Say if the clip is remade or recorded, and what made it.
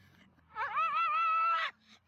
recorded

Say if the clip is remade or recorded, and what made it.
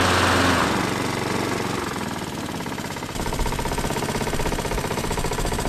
recorded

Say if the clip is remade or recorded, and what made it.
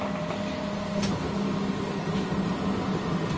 recorded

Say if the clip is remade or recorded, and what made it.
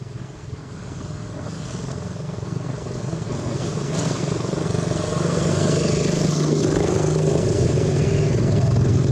remade, codec, SNAC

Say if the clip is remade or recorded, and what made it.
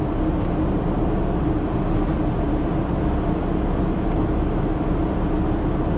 recorded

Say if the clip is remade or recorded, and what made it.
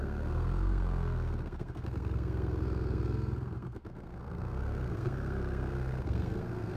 remade, codec, SNAC